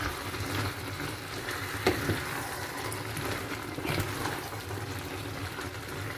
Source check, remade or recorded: recorded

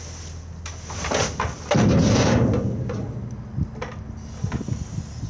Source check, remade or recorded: recorded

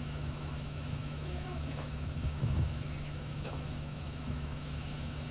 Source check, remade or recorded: remade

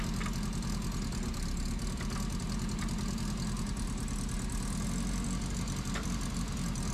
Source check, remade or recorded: recorded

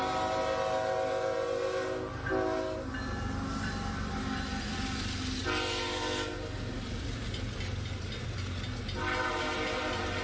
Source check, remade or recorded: recorded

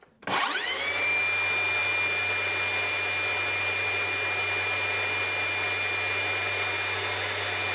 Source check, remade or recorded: recorded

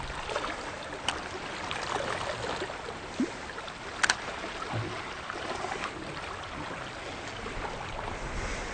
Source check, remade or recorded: recorded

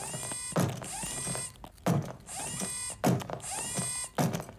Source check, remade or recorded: recorded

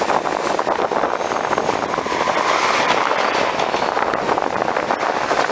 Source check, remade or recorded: recorded